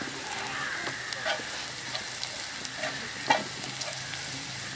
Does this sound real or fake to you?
real